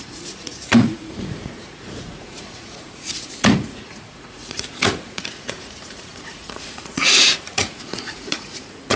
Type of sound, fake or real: fake